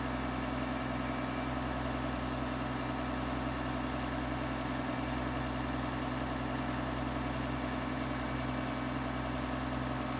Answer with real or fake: real